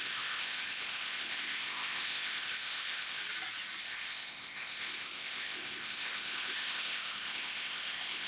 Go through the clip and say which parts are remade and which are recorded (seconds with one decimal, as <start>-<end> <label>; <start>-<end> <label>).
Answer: 0.0-3.2 remade; 3.2-3.8 recorded; 3.8-8.3 remade